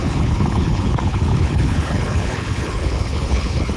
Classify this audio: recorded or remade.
remade